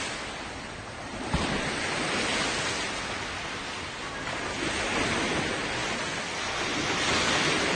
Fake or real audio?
real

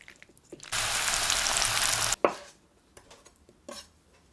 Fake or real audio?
real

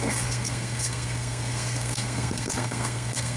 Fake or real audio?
fake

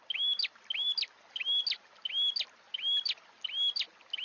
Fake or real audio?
real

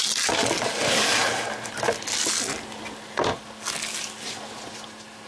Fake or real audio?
real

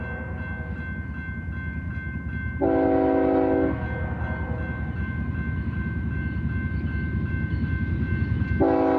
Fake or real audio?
real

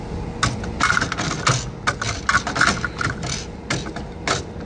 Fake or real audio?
real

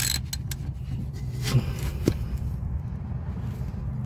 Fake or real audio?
real